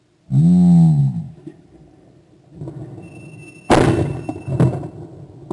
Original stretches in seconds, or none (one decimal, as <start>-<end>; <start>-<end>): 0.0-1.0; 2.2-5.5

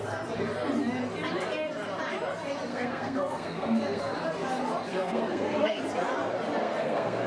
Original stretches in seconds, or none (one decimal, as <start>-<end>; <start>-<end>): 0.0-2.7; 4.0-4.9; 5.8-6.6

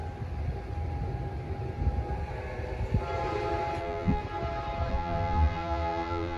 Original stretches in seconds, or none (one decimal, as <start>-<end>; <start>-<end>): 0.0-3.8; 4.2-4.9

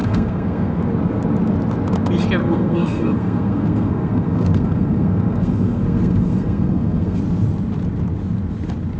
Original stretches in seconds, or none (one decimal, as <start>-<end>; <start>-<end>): 0.8-2.4; 7.2-9.0

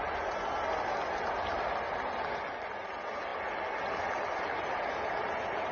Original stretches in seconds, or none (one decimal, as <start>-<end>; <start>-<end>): 0.0-5.7